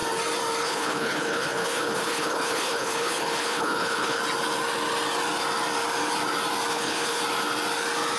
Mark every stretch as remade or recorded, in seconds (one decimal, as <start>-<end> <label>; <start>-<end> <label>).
0.0-0.6 recorded; 0.6-4.2 remade; 4.2-6.7 recorded; 6.7-7.2 remade; 7.2-8.2 recorded